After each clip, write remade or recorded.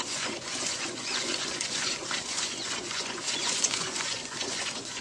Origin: remade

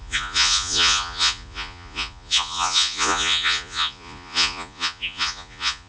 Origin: remade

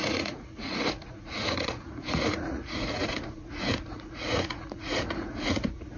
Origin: remade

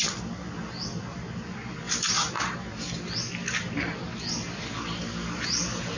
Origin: recorded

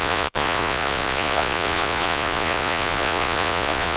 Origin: remade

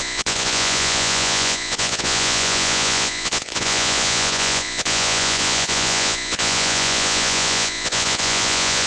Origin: remade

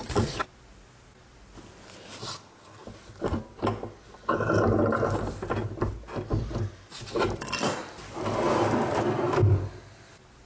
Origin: recorded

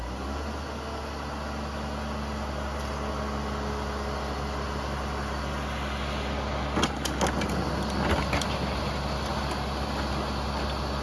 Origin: recorded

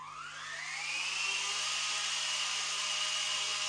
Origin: recorded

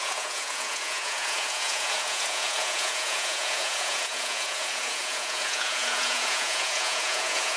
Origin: remade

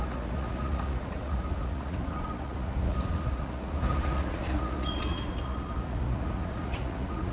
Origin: remade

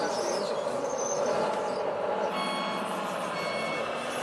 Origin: recorded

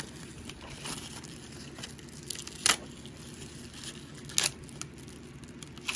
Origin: recorded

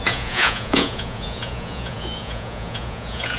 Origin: remade